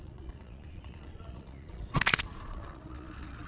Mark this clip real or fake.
fake